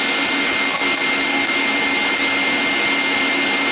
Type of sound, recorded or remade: recorded